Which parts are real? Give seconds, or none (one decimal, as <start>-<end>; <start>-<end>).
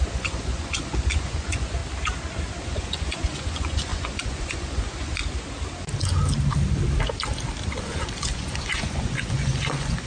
1.8-2.6; 5.2-7.8